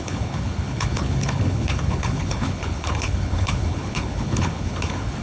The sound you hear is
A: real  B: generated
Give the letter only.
B